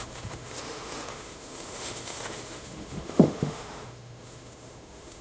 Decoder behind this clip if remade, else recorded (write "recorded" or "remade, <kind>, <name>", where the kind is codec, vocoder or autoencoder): remade, autoencoder, DAC-VAE